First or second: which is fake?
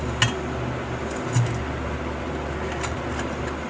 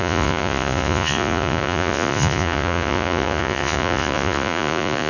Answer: second